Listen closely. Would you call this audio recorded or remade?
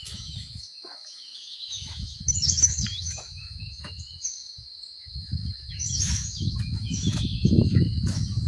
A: remade